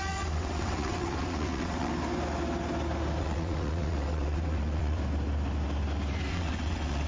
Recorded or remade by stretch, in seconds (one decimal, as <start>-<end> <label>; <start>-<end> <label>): 0.0-1.9 remade; 1.9-3.2 recorded; 3.2-5.0 remade; 5.0-6.3 recorded; 6.3-7.1 remade